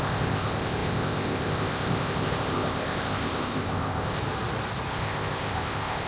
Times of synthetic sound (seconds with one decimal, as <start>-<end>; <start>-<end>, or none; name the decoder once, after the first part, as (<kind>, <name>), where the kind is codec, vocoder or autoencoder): 0.0-4.2 (codec, ZipCodec); 4.9-6.1